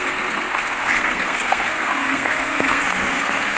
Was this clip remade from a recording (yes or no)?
yes